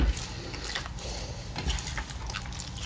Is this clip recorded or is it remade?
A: recorded